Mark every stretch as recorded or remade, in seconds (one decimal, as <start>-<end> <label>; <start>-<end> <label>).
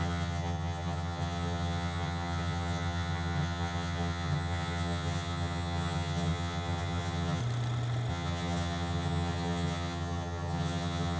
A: 0.0-7.4 remade; 7.4-8.1 recorded; 8.1-11.2 remade